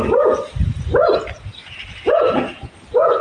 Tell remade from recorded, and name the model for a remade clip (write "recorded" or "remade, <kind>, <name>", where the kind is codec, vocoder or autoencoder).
recorded